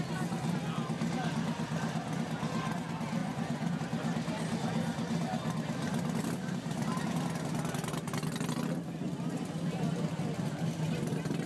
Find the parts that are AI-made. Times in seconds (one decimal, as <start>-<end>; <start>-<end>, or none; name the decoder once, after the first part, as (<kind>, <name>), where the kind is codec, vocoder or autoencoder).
3.2-3.8 (vocoder, Vocos)